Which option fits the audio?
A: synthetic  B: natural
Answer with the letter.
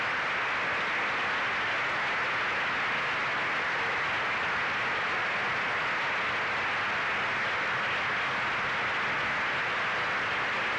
B